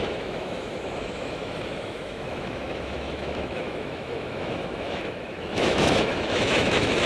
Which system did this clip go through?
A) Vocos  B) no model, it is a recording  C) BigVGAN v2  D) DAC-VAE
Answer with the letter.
D